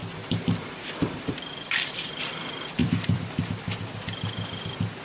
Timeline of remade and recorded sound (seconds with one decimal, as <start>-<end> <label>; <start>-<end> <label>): 0.0-5.0 remade